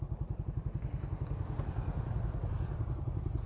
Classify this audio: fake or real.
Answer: real